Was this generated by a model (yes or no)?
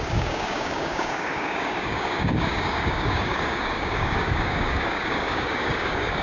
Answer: yes